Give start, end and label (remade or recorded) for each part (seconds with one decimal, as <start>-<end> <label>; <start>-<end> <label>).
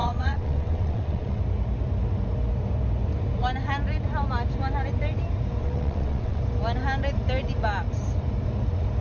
0.0-1.4 remade; 1.4-5.6 recorded; 5.6-6.4 remade; 6.4-9.0 recorded